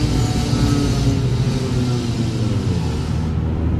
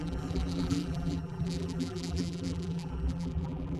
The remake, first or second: second